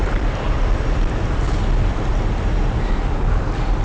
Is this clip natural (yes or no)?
no